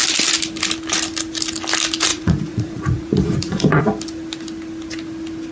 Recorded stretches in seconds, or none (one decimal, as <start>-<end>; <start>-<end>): 0.0-2.1; 3.8-5.5